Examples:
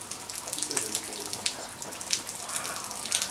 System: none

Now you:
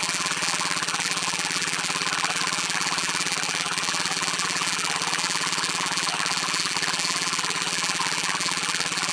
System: vocoder, BigVGAN v2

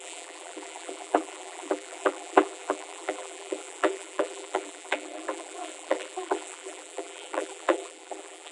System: vocoder, BigVGAN v2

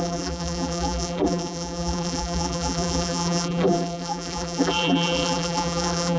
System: vocoder, BigVGAN v2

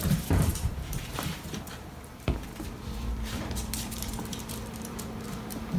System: vocoder, BigVGAN v2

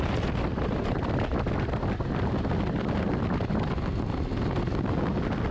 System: none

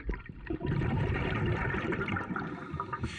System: vocoder, BigVGAN v2